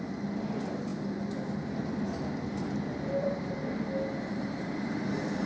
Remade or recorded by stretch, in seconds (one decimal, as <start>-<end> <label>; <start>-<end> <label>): 0.0-5.5 recorded